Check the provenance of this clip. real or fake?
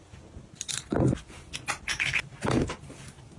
real